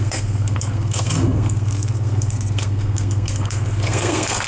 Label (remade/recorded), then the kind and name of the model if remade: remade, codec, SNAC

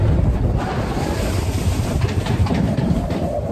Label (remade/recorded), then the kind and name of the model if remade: recorded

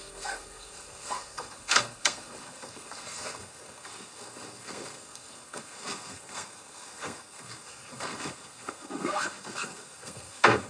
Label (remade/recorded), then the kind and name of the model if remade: remade, codec, SNAC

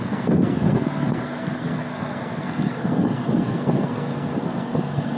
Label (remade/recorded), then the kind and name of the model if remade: remade, codec, SNAC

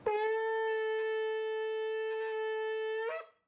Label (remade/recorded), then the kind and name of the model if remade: recorded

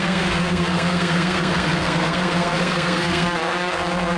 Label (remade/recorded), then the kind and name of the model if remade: remade, codec, SNAC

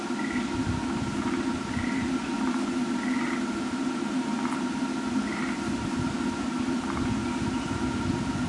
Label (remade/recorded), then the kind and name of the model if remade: recorded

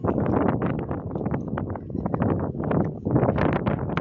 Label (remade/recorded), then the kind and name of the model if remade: recorded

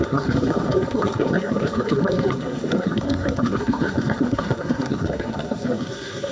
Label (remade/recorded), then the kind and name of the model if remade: remade, codec, SNAC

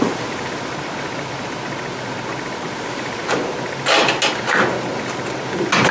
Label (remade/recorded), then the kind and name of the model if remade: recorded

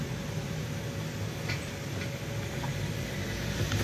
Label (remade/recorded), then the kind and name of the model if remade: recorded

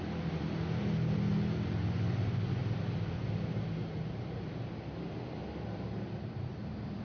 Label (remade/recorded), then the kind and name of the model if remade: recorded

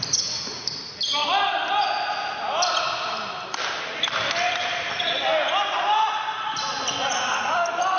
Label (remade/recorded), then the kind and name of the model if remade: recorded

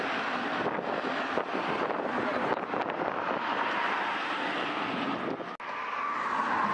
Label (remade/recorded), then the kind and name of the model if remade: recorded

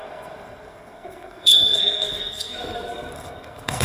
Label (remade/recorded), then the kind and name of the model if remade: remade, codec, SNAC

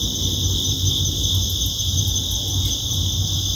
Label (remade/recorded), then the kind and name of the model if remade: recorded